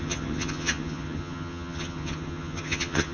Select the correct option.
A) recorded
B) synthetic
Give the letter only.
B